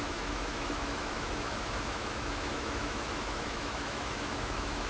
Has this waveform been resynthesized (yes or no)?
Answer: yes